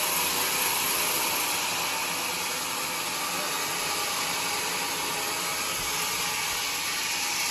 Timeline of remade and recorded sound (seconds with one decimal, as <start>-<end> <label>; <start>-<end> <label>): 0.0-7.5 recorded